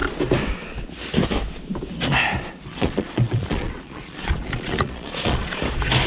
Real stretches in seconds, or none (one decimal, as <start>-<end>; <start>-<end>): 0.0-2.7; 5.6-6.1